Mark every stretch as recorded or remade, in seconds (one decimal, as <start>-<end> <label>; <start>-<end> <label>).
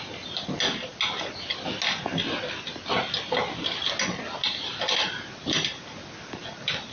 0.0-6.9 recorded